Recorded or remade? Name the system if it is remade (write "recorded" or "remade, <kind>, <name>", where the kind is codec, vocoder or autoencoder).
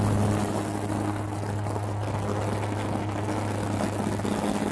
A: recorded